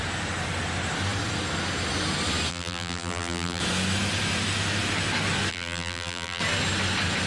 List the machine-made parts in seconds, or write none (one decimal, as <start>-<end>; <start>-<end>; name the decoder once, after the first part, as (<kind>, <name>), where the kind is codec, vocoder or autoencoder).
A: 2.5-3.6 (vocoder, BigVGAN v2); 5.5-6.4